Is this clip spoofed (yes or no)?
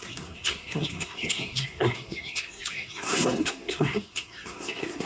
yes